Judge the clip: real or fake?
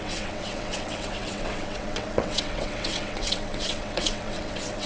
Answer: fake